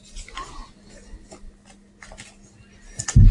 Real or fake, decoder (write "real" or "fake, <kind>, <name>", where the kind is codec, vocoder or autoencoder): real